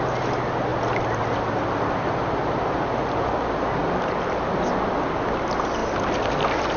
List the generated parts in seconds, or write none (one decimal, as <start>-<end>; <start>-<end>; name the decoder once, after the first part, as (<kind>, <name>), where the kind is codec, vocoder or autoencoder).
none